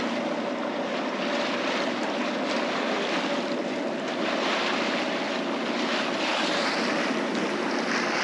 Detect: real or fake real